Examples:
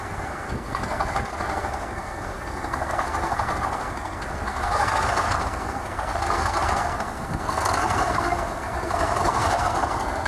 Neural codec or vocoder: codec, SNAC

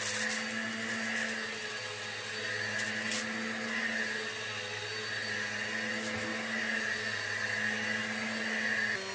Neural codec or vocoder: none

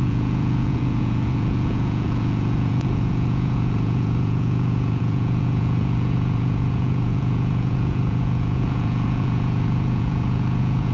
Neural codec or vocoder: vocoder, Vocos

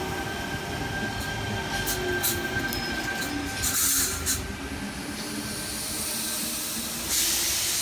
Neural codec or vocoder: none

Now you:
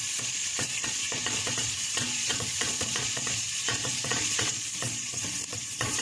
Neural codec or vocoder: vocoder, Vocos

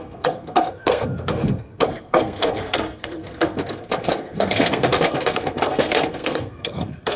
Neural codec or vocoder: codec, SNAC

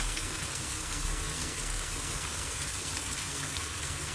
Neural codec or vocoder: codec, SNAC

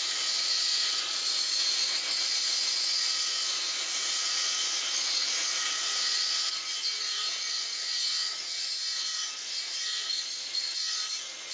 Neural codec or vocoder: vocoder, Vocos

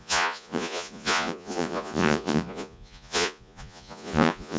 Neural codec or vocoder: vocoder, Vocos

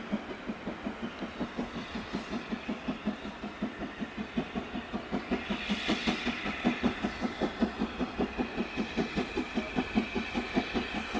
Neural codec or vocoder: none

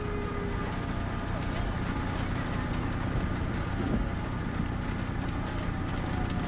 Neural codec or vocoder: none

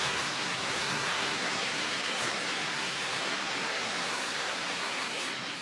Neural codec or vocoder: codec, SNAC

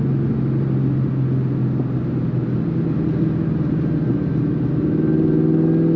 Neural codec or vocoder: none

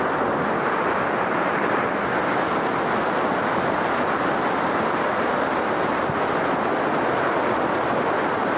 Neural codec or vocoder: none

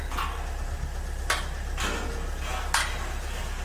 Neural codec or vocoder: none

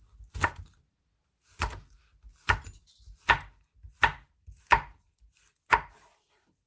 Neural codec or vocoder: none